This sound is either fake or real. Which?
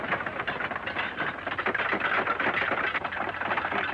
real